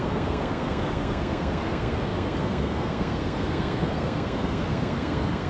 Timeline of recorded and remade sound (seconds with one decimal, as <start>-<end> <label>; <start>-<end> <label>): 0.0-5.5 remade